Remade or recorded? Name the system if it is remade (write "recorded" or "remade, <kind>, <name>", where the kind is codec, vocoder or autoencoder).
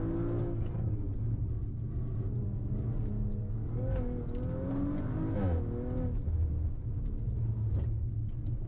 recorded